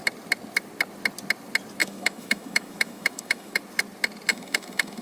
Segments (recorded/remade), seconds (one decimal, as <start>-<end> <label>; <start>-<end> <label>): 0.0-1.8 recorded; 1.8-3.6 remade; 3.6-4.3 recorded; 4.3-5.0 remade